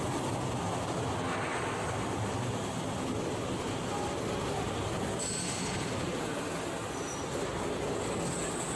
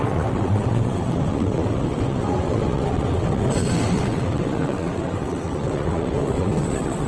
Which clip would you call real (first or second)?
first